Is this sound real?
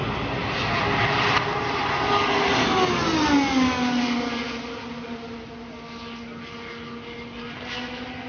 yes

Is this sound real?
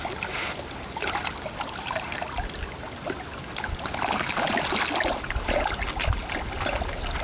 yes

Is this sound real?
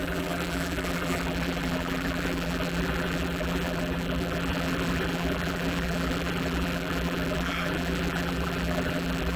no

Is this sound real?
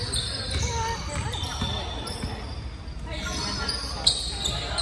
yes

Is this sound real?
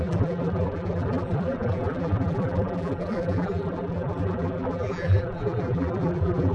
no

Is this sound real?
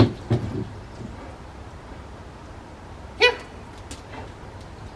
yes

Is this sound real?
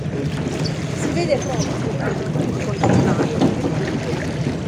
yes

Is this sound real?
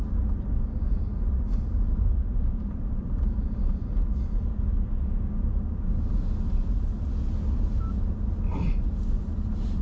yes